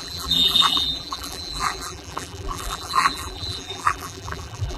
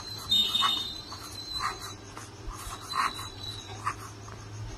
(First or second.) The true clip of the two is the second